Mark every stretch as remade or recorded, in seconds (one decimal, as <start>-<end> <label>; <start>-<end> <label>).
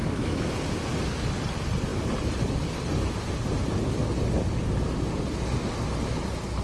0.0-0.5 remade; 0.5-6.6 recorded